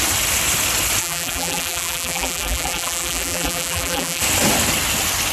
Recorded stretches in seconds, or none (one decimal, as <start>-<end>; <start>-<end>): 0.0-1.0; 4.2-5.3